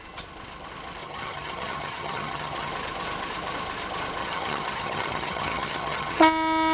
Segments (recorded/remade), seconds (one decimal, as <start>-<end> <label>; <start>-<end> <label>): 0.0-1.0 recorded; 1.0-2.7 remade; 2.7-4.2 recorded; 4.2-6.2 remade; 6.2-6.7 recorded